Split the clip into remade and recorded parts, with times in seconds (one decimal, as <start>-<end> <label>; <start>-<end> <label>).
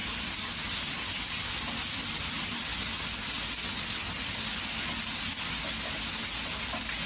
0.0-7.1 recorded